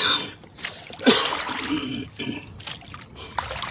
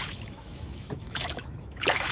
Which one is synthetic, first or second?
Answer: second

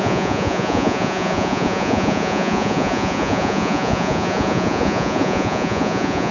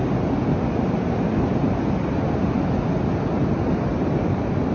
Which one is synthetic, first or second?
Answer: first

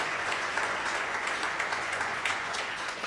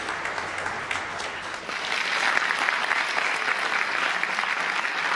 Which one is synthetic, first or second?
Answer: first